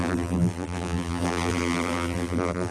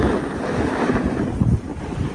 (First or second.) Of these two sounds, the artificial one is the first